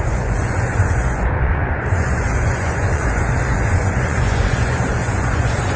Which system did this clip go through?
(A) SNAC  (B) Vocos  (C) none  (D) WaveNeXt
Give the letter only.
B